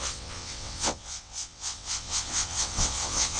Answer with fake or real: fake